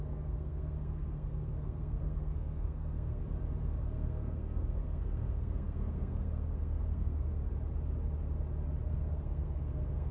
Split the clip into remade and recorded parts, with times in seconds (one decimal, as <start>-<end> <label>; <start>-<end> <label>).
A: 0.0-3.2 remade; 3.2-3.8 recorded; 3.8-7.4 remade; 7.4-8.9 recorded; 8.9-10.1 remade